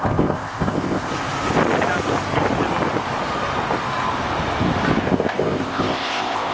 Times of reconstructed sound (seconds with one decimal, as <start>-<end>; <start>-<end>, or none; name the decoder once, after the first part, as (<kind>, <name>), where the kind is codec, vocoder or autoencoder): 0.0-1.1 (codec, ZipCodec); 5.0-6.5